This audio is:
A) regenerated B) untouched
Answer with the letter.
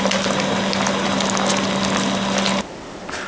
B